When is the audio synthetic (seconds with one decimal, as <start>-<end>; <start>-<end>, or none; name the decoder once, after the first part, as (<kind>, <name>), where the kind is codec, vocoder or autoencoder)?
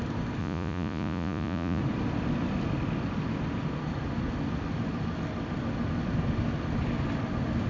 0.4-1.8 (vocoder, Vocos)